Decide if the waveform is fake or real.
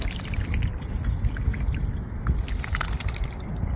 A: real